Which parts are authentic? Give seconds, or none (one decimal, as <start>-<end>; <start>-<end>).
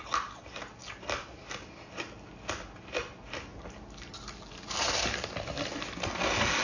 0.0-6.6